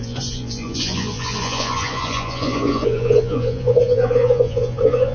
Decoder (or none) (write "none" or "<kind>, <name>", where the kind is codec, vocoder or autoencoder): vocoder, Vocos